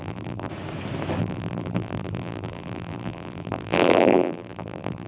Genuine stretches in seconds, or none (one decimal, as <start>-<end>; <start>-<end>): 0.5-1.2